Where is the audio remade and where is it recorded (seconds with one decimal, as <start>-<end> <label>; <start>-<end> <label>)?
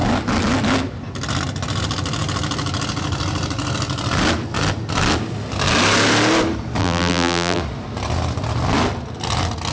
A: 0.0-6.8 recorded; 6.8-7.6 remade; 7.6-9.7 recorded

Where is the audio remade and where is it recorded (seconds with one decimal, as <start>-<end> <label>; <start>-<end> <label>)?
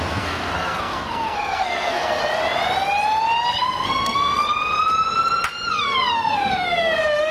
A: 0.0-2.2 remade; 2.2-3.5 recorded; 3.5-4.4 remade; 4.4-5.7 recorded; 5.7-7.3 remade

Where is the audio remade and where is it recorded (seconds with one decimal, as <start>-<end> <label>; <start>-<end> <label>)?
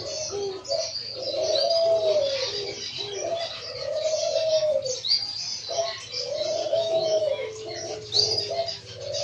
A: 0.0-6.7 recorded; 6.7-7.5 remade; 7.5-9.2 recorded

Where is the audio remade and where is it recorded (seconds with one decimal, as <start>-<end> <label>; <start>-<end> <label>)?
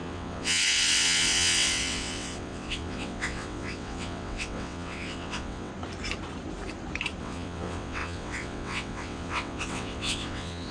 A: 0.0-5.7 remade; 5.7-7.2 recorded; 7.2-10.7 remade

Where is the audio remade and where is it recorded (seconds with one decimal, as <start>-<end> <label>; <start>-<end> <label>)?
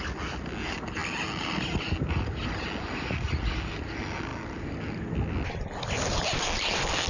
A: 0.0-7.1 recorded